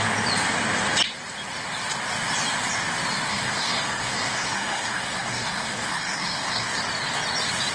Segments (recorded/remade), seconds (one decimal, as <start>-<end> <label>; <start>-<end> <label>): 0.0-3.3 recorded; 3.3-6.8 remade; 6.8-7.7 recorded